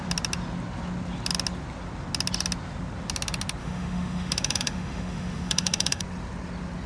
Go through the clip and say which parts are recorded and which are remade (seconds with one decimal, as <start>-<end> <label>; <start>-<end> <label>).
0.0-3.6 recorded; 3.6-6.0 remade; 6.0-6.9 recorded